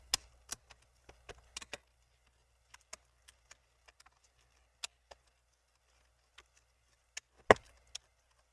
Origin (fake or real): real